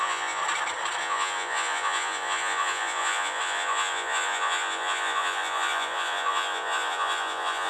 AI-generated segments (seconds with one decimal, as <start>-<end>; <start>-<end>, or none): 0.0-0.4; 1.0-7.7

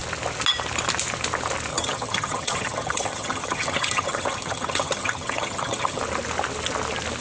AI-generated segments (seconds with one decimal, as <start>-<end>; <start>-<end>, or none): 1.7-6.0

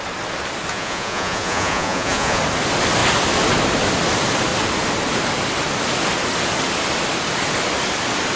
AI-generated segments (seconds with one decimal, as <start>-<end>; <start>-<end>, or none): 0.7-2.4